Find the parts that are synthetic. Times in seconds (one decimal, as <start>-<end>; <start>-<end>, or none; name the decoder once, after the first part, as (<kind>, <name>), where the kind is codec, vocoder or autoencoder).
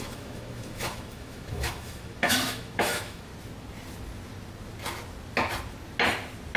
0.0-3.3 (autoencoder, DAC-VAE)